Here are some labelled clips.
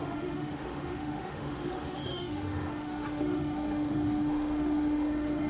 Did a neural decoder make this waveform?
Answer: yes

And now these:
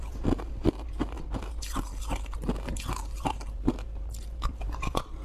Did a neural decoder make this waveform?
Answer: no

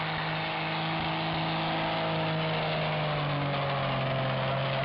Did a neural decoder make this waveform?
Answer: no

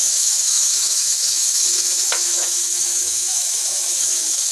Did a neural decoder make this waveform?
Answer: yes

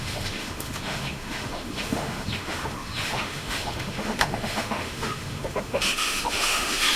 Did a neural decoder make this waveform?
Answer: yes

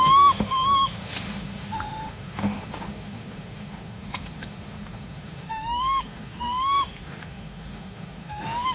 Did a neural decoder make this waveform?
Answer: yes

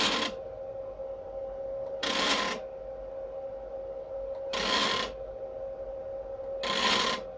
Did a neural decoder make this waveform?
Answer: no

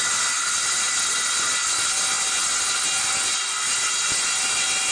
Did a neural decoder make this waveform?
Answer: no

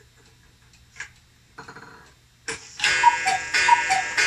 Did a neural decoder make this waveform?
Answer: no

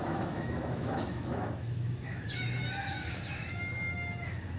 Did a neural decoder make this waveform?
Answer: yes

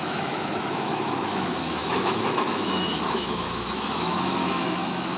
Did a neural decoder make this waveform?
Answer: yes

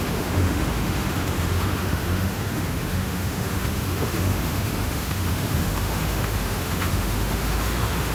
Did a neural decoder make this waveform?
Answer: yes